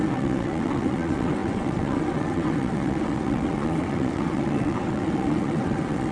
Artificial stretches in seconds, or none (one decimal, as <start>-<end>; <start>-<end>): 0.0-6.1